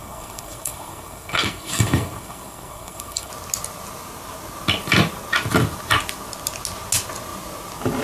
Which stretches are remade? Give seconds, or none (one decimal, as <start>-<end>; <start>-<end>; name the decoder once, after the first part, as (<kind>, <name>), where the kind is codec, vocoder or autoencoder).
0.0-3.3 (codec, SNAC)